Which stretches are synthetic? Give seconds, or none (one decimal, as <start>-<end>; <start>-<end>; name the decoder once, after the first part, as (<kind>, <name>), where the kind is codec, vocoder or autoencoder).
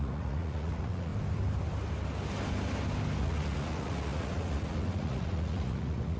0.0-1.1 (vocoder, Vocos); 3.2-6.2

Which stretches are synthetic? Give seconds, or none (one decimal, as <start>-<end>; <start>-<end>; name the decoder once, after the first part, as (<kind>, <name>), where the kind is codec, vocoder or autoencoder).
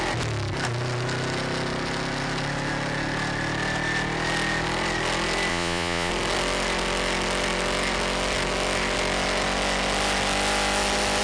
5.5-6.1 (vocoder, Vocos)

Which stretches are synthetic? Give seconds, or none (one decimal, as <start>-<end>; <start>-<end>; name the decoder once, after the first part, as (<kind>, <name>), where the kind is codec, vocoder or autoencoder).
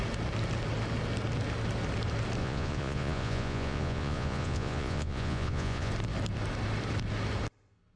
2.4-5.9 (vocoder, Vocos)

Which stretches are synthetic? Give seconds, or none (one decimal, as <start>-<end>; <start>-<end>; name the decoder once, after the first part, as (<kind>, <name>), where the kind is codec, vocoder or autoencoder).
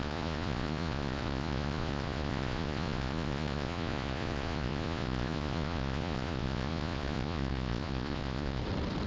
0.0-8.6 (vocoder, Vocos)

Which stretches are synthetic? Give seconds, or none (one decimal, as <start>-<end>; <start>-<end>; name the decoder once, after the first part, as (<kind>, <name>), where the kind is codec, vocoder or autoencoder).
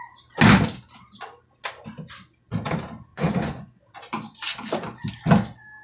3.1-3.8 (vocoder, Vocos)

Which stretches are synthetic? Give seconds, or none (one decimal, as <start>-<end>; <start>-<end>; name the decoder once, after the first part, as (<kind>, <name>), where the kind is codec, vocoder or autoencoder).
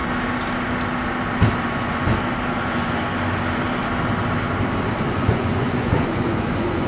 1.6-2.1 (vocoder, Vocos); 2.6-3.0; 5.1-6.9